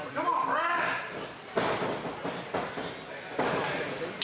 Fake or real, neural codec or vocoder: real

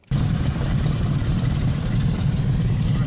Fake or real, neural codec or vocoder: real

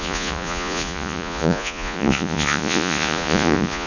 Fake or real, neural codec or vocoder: fake, vocoder, Vocos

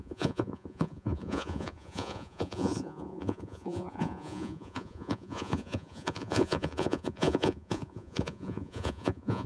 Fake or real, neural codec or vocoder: fake, vocoder, Vocos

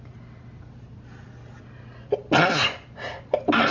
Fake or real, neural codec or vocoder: real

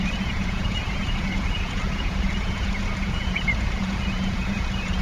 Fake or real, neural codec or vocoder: fake, vocoder, Vocos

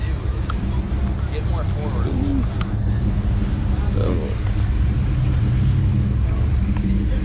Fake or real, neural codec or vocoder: real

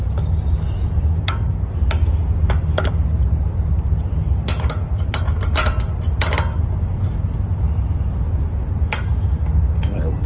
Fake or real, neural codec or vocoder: real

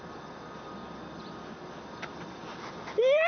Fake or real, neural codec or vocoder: real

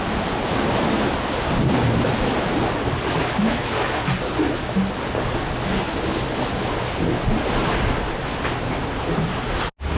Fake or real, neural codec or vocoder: real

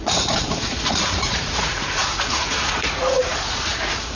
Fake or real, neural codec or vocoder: fake, vocoder, Vocos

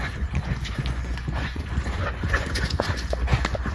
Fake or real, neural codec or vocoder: fake, vocoder, Vocos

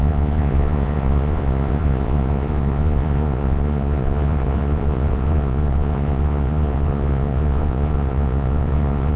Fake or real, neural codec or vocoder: fake, vocoder, Vocos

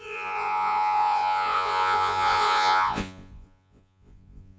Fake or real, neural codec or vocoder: fake, vocoder, Vocos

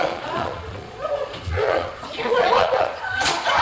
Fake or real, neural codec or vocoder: fake, vocoder, Vocos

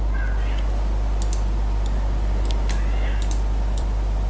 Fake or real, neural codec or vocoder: real